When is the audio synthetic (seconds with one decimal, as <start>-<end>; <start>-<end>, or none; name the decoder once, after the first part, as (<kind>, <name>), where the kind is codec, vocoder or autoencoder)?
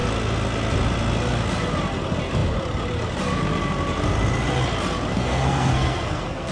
5.1-6.5 (codec, SNAC)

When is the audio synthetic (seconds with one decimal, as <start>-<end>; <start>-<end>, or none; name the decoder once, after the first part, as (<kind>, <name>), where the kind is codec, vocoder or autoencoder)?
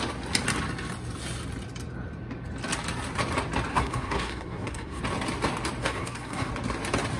3.7-5.0 (codec, SNAC); 5.8-6.5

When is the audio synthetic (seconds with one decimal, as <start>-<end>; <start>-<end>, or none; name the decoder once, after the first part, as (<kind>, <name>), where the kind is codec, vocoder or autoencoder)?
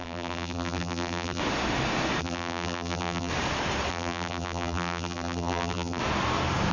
0.0-1.4 (vocoder, BigVGAN v2); 2.2-3.3; 3.9-6.0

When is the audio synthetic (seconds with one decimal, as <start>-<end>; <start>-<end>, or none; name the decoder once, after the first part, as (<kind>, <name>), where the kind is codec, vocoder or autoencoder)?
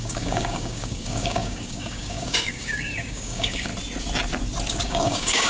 0.0-3.7 (codec, DAC); 4.7-5.5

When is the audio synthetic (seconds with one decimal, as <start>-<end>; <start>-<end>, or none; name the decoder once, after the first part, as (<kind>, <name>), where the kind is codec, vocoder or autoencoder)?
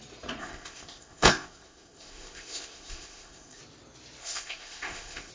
0.4-3.6 (codec, ZipCodec); 4.2-5.3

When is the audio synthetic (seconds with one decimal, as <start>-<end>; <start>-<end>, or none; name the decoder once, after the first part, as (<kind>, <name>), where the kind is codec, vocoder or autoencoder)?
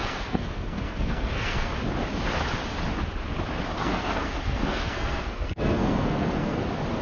0.0-1.7 (codec, SNAC); 3.8-6.6